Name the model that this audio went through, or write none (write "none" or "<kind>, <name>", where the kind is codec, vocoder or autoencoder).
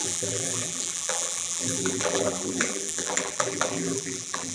vocoder, BigVGAN v2